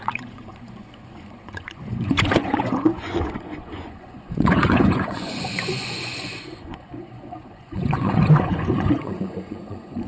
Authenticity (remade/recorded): remade